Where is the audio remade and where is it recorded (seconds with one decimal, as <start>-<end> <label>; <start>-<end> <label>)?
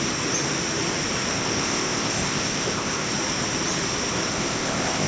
0.0-1.3 recorded; 1.3-3.1 remade; 3.1-4.3 recorded; 4.3-5.1 remade